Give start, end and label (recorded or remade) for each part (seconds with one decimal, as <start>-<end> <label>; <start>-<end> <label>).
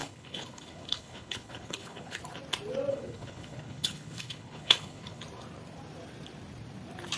0.0-2.2 remade; 2.2-2.9 recorded; 2.9-5.2 remade; 5.2-7.2 recorded